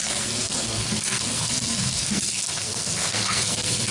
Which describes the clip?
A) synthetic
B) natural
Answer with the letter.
A